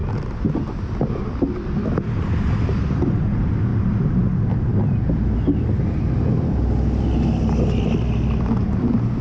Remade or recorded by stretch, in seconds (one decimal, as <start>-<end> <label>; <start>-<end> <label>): 0.0-9.2 recorded